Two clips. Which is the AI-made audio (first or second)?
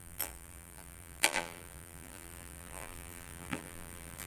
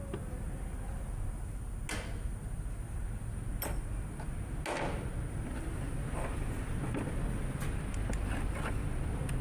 first